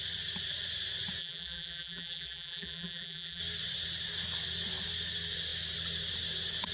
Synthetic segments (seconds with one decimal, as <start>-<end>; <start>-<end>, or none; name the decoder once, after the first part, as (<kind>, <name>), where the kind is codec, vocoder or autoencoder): 1.2-3.4 (vocoder, BigVGAN v2)